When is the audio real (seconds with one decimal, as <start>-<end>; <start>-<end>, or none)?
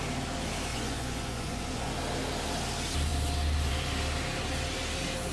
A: 0.0-0.7; 1.9-5.3